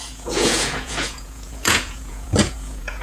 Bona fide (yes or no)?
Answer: no